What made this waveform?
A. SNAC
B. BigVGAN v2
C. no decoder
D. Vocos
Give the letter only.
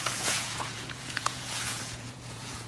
D